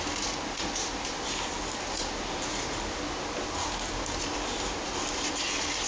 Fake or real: real